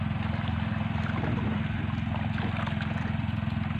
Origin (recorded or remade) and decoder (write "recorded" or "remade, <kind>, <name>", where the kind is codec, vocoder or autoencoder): recorded